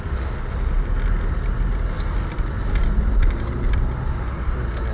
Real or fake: real